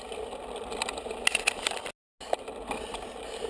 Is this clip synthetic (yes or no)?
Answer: no